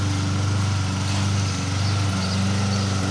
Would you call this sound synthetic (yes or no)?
no